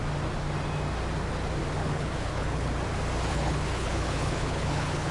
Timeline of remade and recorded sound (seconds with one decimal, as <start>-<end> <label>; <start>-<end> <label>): 0.0-1.8 recorded; 1.8-2.7 remade; 2.7-3.3 recorded; 3.3-5.1 remade